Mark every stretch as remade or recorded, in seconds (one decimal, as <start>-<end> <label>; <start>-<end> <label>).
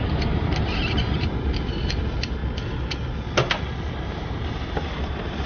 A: 0.0-2.4 remade; 2.4-3.9 recorded; 3.9-5.5 remade